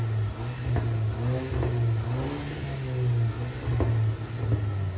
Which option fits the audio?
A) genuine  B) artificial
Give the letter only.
A